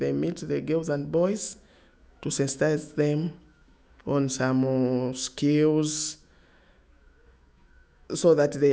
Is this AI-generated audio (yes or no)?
yes